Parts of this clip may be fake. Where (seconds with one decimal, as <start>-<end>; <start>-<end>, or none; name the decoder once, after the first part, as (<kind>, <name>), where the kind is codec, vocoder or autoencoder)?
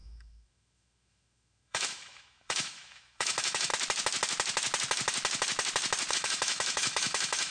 0.0-3.7 (autoencoder, DAC-VAE); 6.1-7.5